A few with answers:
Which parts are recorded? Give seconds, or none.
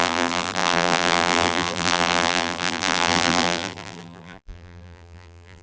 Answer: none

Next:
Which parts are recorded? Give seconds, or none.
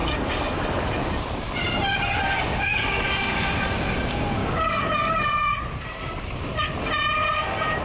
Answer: 0.6-2.7; 3.4-4.4; 5.5-7.8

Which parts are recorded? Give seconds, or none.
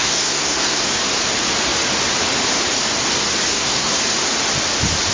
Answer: 0.8-3.5; 4.0-5.1